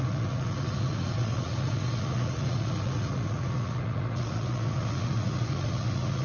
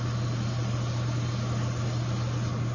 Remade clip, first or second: first